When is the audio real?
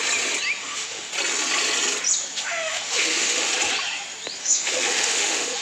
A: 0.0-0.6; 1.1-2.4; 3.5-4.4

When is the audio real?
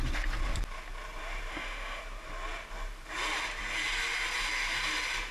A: 0.0-1.5; 2.0-5.3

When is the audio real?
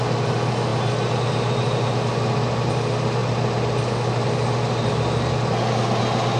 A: 0.0-6.4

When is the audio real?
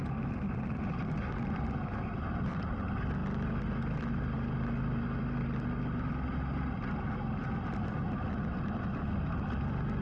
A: 0.0-10.0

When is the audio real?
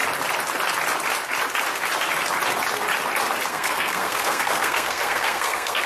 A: 0.0-3.5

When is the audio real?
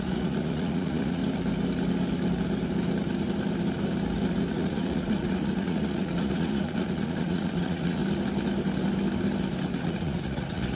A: 1.2-4.5; 8.0-9.8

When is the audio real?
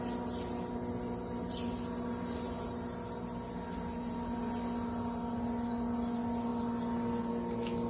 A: 0.0-7.9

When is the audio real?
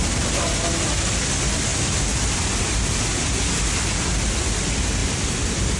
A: 0.0-5.0